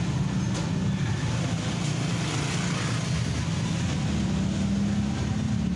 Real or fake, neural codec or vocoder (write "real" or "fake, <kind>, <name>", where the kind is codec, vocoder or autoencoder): real